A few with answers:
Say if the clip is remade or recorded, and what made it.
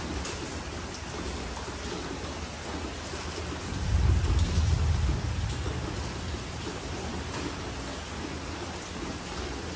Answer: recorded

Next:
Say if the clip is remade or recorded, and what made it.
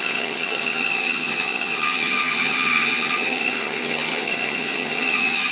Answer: remade, vocoder, HiFi-GAN